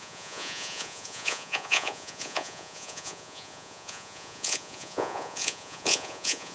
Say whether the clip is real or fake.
fake